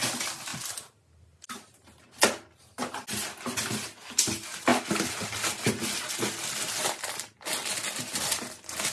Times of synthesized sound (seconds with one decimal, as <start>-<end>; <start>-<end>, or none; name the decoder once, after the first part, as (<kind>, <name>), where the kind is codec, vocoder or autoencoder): none